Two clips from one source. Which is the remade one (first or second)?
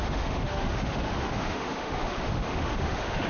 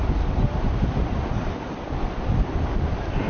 first